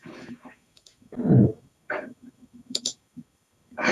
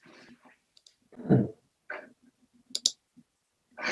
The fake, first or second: first